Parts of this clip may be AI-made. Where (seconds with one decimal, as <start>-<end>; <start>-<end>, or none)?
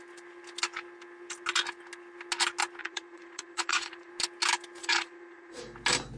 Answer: 2.8-4.1; 4.8-5.6